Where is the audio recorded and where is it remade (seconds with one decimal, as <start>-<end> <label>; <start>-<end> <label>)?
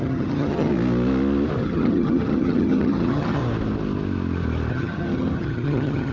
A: 0.0-0.7 remade; 0.7-1.6 recorded; 1.6-3.4 remade; 3.4-4.7 recorded; 4.7-6.1 remade